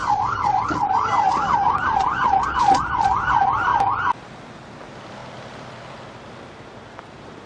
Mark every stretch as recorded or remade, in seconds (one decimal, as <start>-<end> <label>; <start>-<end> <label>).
0.0-3.7 remade; 3.7-4.8 recorded; 4.8-7.5 remade